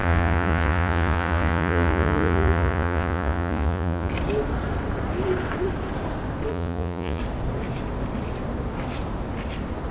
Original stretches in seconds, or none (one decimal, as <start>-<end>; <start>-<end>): 4.1-6.5; 7.2-9.9